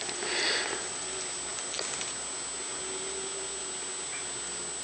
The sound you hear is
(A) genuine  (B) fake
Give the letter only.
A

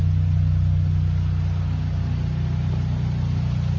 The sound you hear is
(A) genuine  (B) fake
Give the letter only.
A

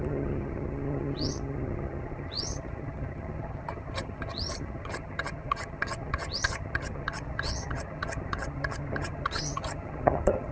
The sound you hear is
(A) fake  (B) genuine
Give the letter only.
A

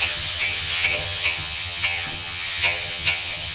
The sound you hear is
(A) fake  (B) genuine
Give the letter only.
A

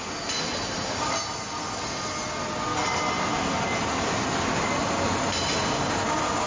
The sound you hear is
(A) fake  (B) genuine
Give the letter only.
B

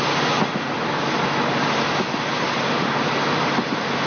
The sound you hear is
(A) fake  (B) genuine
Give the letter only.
B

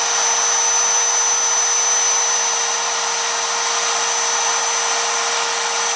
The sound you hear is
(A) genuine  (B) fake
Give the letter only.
A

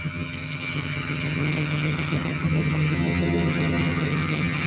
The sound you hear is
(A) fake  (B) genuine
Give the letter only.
A